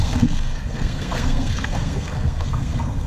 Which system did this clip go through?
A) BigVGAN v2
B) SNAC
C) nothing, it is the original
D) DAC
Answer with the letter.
B